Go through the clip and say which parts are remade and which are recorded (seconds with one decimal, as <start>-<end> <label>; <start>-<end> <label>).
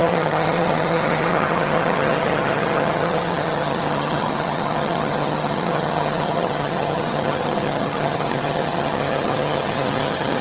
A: 0.0-10.4 remade